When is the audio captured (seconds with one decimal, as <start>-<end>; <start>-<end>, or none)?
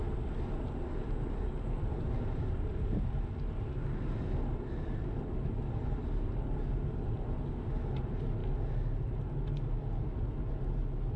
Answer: 0.0-11.2